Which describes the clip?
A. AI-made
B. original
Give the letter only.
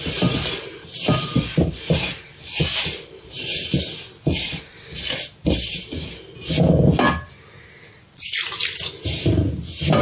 B